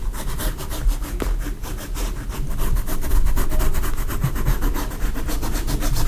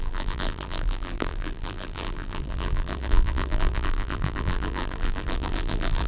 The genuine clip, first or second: first